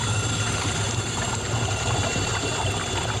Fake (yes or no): no